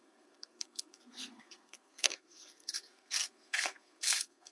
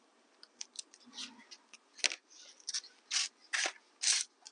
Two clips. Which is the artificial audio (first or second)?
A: first